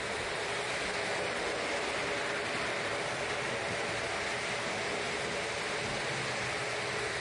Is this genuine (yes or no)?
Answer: yes